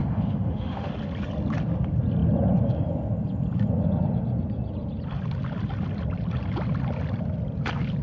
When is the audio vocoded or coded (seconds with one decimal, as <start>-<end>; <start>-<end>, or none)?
0.0-0.9